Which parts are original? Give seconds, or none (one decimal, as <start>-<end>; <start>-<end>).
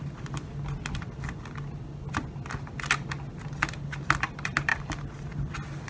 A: 0.0-5.9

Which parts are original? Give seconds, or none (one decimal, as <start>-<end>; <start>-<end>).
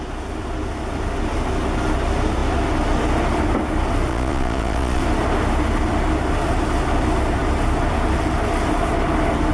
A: 0.0-4.1; 5.0-9.5